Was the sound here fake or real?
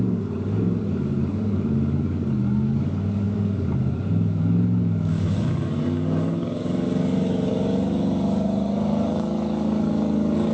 fake